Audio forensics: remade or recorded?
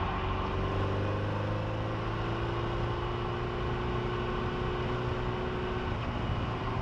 recorded